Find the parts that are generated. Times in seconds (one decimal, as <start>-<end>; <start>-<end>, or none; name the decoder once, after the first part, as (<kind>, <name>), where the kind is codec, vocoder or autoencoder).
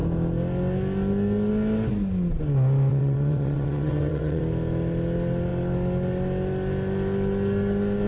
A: 2.9-4.4 (vocoder, WaveNeXt)